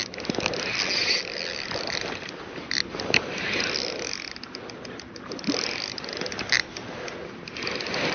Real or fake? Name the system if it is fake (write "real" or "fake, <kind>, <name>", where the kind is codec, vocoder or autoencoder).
real